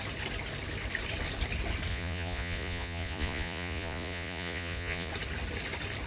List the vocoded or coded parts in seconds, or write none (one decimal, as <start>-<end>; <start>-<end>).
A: 1.9-5.1